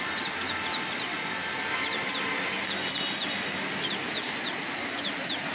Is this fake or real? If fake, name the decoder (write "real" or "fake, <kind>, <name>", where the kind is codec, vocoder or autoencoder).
real